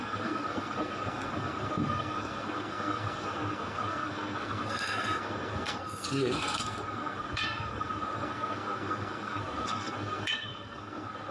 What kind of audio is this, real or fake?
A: fake